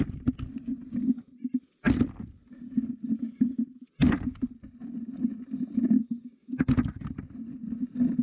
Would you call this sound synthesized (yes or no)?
no